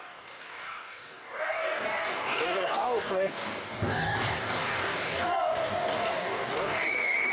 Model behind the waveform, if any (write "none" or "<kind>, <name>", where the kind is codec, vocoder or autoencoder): codec, DAC